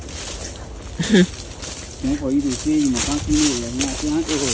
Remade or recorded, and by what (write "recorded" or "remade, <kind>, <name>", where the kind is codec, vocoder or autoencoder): recorded